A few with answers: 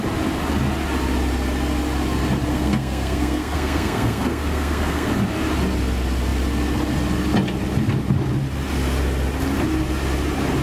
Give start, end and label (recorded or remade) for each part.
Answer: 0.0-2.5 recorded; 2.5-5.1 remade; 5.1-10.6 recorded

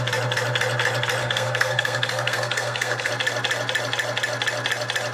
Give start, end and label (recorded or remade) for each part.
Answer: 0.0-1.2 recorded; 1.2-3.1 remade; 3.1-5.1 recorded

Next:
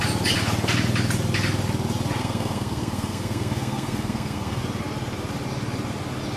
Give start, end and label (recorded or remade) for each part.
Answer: 0.0-2.2 recorded; 2.2-4.6 remade; 4.6-6.4 recorded

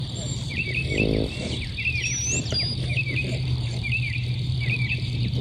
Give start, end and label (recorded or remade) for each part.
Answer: 0.0-0.8 remade; 0.8-3.0 recorded; 3.0-5.4 remade

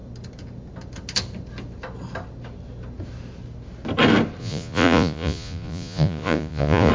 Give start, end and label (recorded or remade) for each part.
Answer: 0.0-4.4 recorded; 4.4-6.9 remade

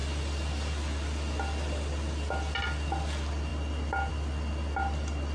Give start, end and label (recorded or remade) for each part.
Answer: 0.0-5.3 recorded

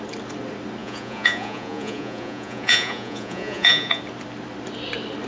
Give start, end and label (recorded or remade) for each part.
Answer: 0.0-0.8 recorded; 0.8-4.0 remade; 4.0-5.3 recorded